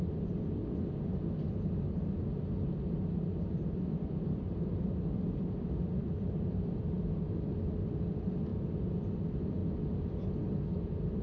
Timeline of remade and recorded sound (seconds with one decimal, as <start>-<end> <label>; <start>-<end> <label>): 0.0-0.6 remade; 0.6-3.5 recorded; 3.5-9.6 remade; 9.6-10.4 recorded; 10.4-11.2 remade

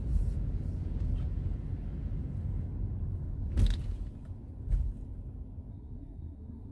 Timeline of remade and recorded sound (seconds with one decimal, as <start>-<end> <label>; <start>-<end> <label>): 0.0-5.7 recorded; 5.7-6.7 remade